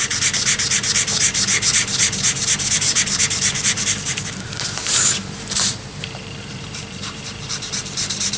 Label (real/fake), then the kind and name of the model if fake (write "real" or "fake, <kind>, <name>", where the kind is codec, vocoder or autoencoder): fake, vocoder, BigVGAN v2